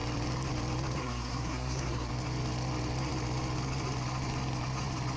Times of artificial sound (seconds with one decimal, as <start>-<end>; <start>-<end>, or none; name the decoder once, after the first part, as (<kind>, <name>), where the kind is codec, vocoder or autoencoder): 1.0-2.1 (codec, SNAC)